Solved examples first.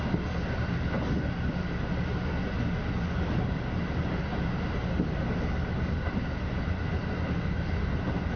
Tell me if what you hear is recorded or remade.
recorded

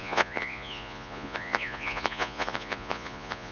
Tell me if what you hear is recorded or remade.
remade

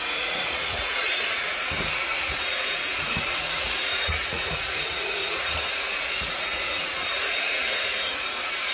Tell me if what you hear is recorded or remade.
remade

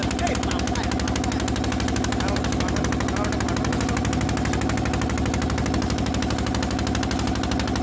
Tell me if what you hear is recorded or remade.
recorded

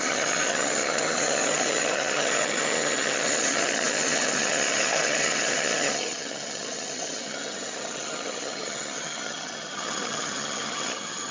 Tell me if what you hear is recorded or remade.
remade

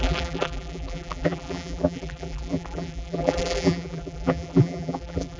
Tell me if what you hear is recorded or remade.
remade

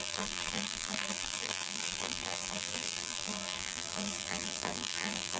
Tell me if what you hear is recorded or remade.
remade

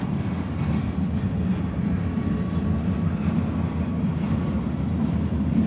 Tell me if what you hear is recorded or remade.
recorded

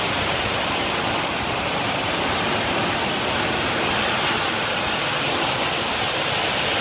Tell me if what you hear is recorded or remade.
recorded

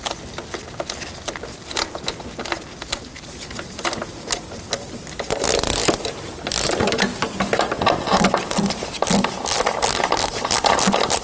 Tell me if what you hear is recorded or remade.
recorded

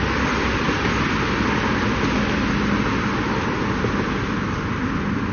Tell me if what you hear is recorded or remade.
recorded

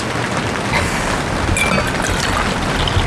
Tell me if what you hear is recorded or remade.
recorded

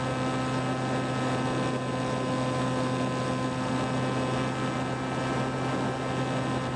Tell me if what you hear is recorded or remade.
recorded